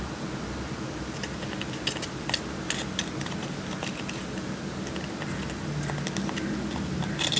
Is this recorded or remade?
recorded